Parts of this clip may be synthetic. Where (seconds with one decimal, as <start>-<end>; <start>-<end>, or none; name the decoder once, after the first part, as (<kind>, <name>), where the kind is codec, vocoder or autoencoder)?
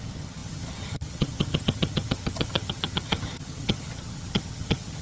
0.0-5.0 (vocoder, HiFi-GAN)